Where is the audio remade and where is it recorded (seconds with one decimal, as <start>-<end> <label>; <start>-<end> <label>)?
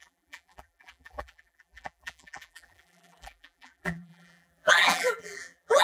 0.0-5.8 remade